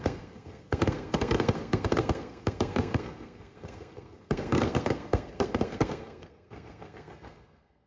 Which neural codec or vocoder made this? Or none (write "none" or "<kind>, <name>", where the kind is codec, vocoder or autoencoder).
codec, SNAC